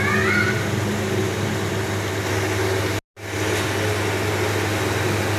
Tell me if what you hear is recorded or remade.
recorded